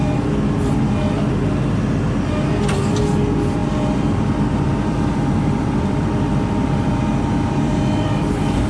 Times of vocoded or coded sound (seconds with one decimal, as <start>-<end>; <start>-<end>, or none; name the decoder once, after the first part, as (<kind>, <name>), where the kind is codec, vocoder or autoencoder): 3.6-8.7 (vocoder, BigVGAN v2)